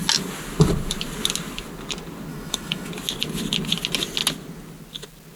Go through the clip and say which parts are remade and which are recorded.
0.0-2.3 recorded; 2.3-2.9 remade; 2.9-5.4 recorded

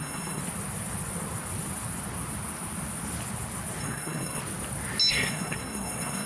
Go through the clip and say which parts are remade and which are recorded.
0.0-0.4 remade; 0.4-3.8 recorded; 3.8-4.4 remade; 4.4-5.1 recorded; 5.1-6.3 remade

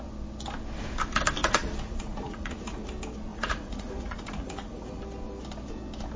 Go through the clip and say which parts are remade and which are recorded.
0.0-1.4 recorded; 1.4-2.9 remade; 2.9-3.3 recorded; 3.3-5.0 remade; 5.0-6.2 recorded

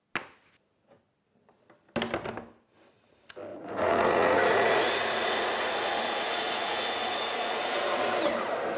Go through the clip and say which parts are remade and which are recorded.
0.0-3.5 recorded; 3.5-8.1 remade; 8.1-8.8 recorded

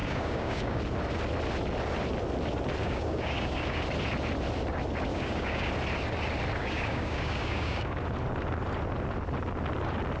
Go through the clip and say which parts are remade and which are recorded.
0.0-0.8 remade; 0.8-2.8 recorded; 2.8-3.8 remade; 3.8-5.1 recorded; 5.1-5.7 remade; 5.7-6.6 recorded; 6.6-8.0 remade; 8.0-10.2 recorded